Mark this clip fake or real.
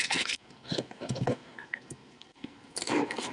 fake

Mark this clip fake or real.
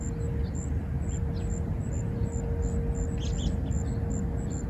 real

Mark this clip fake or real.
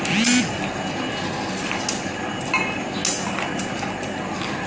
real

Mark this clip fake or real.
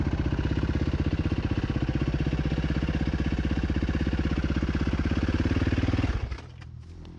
real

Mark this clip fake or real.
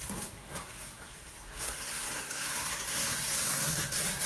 fake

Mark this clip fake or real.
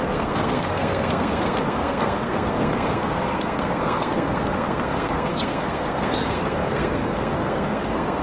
fake